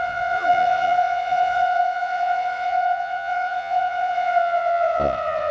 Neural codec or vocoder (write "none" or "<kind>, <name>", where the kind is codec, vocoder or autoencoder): vocoder, Vocos